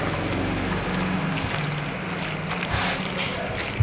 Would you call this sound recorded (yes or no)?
yes